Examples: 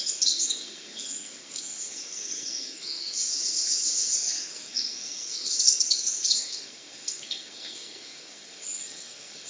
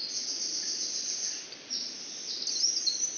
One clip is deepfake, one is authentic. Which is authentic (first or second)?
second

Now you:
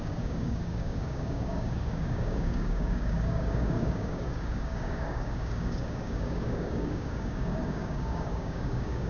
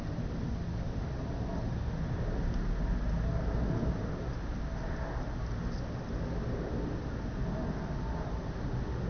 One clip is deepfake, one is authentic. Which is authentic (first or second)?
second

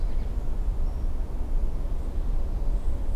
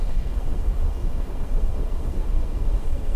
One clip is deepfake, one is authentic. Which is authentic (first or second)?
first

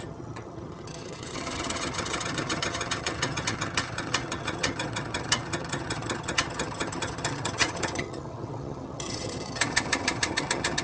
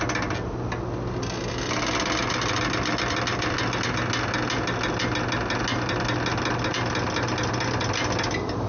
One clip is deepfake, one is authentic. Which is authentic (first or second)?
second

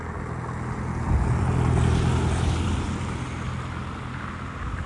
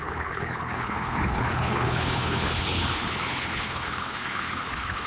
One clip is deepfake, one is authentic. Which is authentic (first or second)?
first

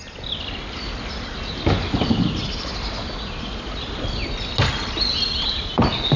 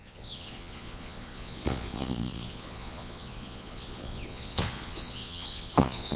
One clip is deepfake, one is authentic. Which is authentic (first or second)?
first